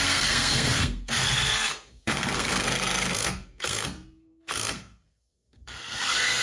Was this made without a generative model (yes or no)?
no